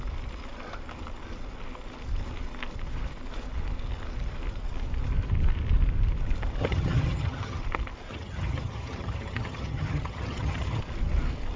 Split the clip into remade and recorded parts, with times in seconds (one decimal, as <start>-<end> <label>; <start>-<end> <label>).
0.0-6.6 recorded; 6.6-7.6 remade; 7.6-8.1 recorded; 8.1-10.8 remade; 10.8-11.6 recorded